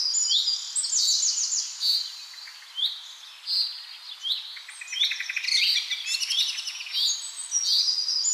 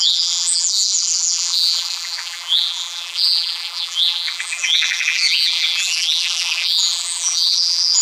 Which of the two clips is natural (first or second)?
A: first